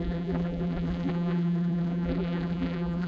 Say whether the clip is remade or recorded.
remade